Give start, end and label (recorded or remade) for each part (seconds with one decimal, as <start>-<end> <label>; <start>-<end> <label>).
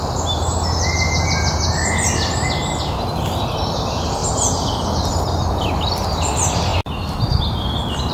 0.0-8.1 recorded